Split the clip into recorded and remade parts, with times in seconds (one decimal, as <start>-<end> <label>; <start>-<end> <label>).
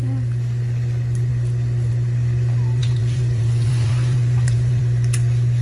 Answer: 0.0-2.8 recorded; 2.8-4.8 remade; 4.8-5.6 recorded